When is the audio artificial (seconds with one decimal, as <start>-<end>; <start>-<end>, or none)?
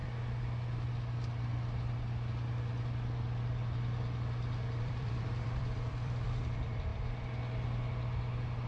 4.8-6.9